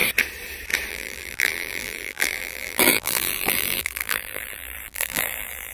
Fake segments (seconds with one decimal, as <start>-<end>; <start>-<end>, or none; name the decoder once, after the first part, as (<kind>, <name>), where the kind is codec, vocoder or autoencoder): 0.9-5.7 (vocoder, BigVGAN v2)